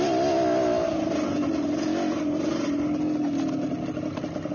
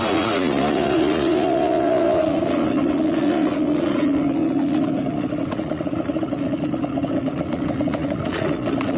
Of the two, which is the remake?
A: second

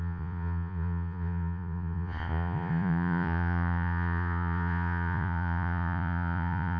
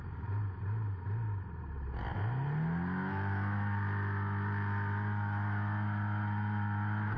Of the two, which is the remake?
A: first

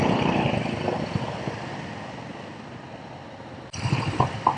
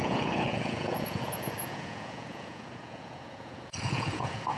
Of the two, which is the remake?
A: second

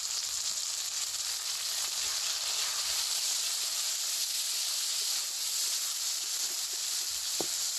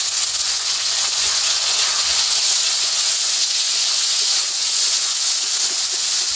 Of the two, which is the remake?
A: second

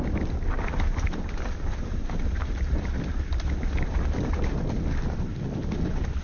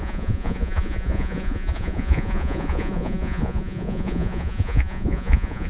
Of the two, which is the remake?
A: second